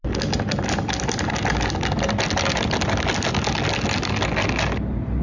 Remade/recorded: recorded